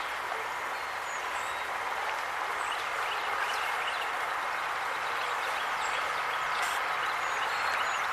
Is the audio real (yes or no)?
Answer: yes